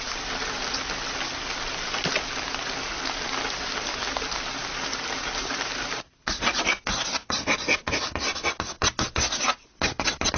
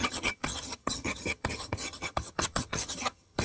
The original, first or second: first